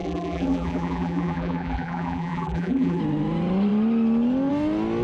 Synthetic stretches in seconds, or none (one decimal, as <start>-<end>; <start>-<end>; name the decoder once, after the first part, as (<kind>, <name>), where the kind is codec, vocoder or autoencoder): 0.0-3.0 (vocoder, BigVGAN v2)